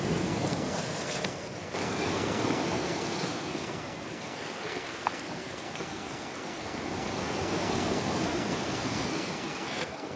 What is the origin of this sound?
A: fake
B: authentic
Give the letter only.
A